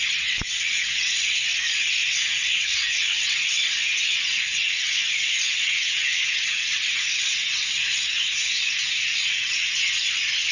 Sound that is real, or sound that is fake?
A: fake